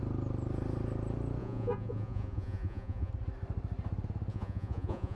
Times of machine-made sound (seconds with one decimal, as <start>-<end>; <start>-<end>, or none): 1.4-3.1; 4.3-5.2

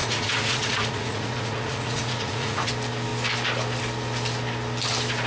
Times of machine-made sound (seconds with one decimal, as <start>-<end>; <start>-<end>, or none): 0.0-2.7